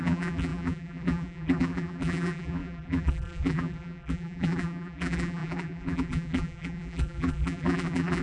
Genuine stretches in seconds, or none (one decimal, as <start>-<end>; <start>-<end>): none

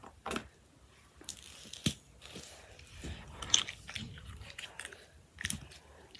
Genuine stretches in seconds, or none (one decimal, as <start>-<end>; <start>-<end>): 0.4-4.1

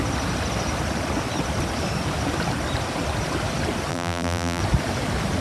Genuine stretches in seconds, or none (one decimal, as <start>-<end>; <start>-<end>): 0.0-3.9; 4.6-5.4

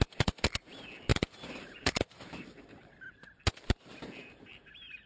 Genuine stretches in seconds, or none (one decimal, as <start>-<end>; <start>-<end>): 0.0-1.1; 3.1-4.2

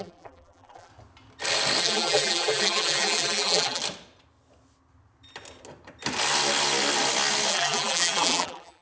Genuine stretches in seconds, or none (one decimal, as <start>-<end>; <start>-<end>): 0.9-1.8; 3.8-7.5

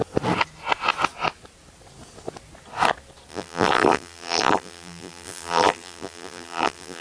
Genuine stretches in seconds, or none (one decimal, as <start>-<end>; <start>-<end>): 0.0-3.3

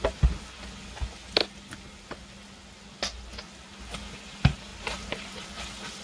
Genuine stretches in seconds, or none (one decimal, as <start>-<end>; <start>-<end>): 0.0-4.7; 5.5-6.0

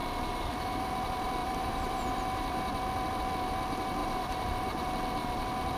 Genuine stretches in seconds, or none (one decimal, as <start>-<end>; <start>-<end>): 0.9-1.4; 2.6-4.0; 4.9-5.8